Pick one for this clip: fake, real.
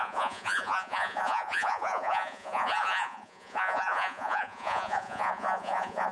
fake